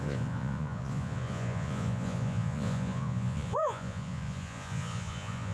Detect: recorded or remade remade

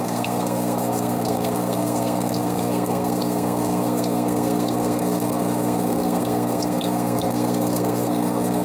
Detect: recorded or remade remade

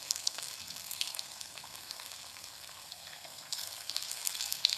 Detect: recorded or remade remade